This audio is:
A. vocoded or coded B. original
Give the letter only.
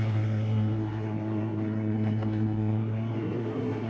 A